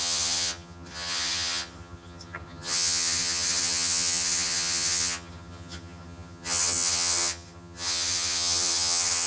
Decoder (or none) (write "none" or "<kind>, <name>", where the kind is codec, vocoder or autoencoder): vocoder, HiFi-GAN